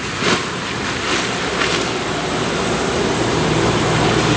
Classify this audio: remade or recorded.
recorded